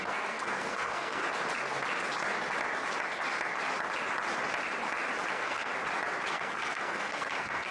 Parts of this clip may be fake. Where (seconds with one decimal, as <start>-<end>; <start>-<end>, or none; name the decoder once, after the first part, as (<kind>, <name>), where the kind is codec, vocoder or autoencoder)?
0.0-1.2 (codec, SNAC); 5.3-5.7; 6.3-7.7